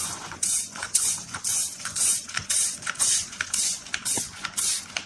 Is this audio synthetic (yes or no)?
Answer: yes